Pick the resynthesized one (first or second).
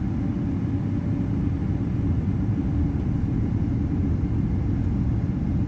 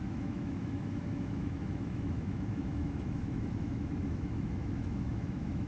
second